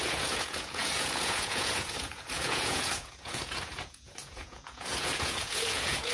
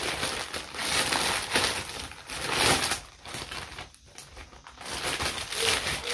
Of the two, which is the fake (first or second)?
first